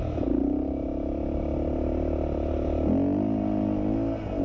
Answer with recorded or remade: recorded